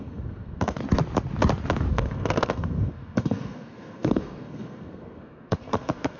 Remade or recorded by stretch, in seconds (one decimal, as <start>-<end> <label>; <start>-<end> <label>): 0.0-0.8 remade; 0.8-1.9 recorded; 1.9-6.2 remade